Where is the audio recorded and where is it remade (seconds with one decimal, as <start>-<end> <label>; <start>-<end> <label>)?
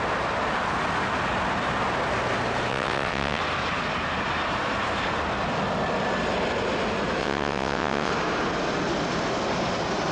0.0-2.7 recorded; 2.7-3.4 remade; 3.4-7.2 recorded; 7.2-8.1 remade; 8.1-10.1 recorded